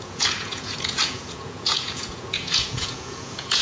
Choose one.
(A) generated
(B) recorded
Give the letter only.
A